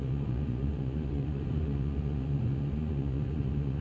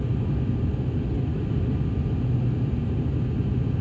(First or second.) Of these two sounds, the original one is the second